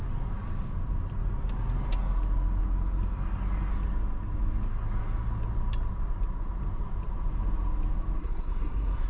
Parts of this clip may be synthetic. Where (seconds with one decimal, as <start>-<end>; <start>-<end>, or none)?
8.2-9.1